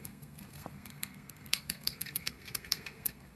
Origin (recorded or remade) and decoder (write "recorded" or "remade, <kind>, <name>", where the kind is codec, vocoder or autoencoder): remade, codec, SNAC